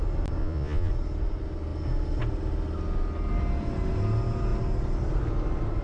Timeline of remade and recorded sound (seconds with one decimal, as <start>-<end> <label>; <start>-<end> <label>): 0.0-0.4 recorded; 0.4-0.9 remade; 0.9-5.8 recorded